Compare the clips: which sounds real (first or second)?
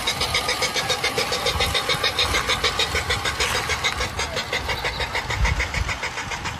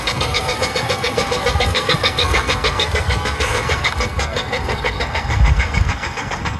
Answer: first